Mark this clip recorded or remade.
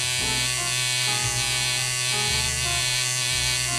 recorded